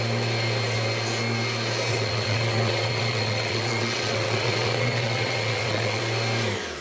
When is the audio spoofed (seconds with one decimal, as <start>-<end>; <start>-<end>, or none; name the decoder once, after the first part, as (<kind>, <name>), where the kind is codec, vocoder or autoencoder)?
1.9-6.0 (vocoder, WaveNeXt)